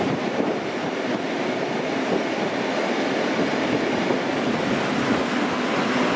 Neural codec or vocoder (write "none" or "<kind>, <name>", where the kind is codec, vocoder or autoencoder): none